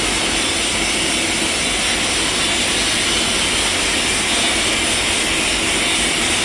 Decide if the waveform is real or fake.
real